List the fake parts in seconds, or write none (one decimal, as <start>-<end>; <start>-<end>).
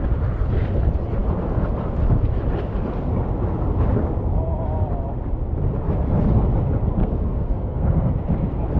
7.0-8.1